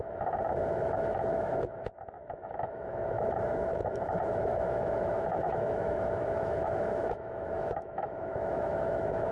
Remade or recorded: remade